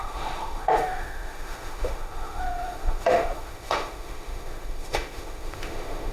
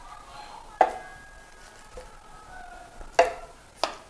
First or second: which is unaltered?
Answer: second